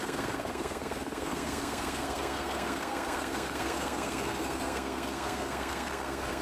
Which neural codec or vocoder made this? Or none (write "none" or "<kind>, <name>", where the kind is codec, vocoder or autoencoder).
codec, SNAC